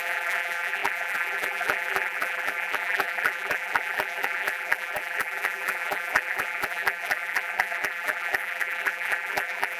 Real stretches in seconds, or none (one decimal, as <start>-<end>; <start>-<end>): none